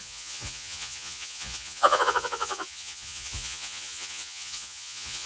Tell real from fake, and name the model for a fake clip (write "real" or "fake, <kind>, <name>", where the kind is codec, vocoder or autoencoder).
fake, vocoder, Vocos